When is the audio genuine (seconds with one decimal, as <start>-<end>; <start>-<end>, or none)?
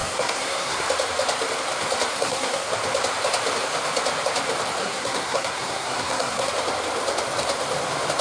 0.9-2.1; 2.7-4.8; 6.5-8.2